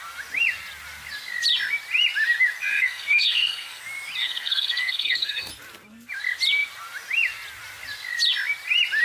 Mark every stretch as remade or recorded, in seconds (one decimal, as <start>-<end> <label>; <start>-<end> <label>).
0.0-2.7 recorded; 2.7-3.8 remade; 3.8-4.2 recorded; 4.2-5.5 remade; 5.5-9.0 recorded